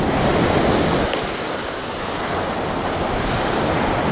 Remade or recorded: recorded